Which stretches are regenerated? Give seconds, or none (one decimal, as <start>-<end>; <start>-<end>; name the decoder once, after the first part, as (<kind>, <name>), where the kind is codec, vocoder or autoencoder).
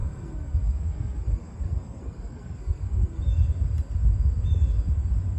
0.0-3.2 (codec, SNAC)